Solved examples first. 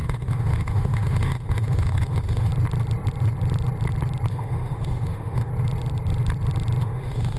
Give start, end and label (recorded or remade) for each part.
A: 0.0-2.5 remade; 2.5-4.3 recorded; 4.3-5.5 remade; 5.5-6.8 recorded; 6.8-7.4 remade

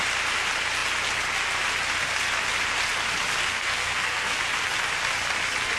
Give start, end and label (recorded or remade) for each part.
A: 0.0-3.5 recorded; 3.5-4.4 remade; 4.4-5.8 recorded

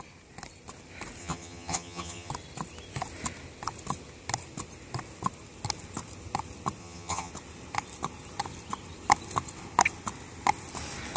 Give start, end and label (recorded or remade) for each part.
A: 0.0-1.2 recorded; 1.2-2.3 remade; 2.3-6.8 recorded; 6.8-7.3 remade; 7.3-11.2 recorded

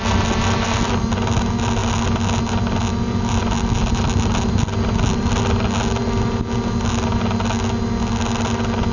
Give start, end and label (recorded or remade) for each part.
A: 0.0-8.9 recorded

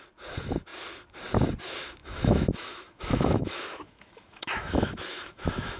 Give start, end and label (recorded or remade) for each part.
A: 0.0-2.0 recorded; 2.0-5.8 remade

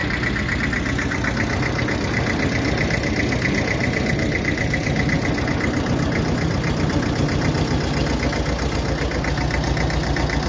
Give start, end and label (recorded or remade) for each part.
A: 0.0-10.5 recorded

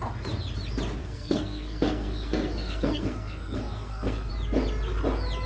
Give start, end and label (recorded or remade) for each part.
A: 0.0-1.0 recorded; 1.0-4.3 remade; 4.3-5.5 recorded